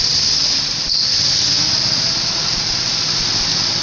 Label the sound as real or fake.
fake